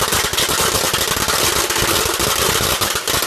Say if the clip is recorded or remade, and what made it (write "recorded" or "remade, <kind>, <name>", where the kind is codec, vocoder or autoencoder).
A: recorded